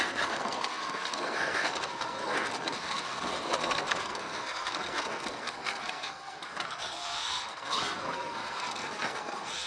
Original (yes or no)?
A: no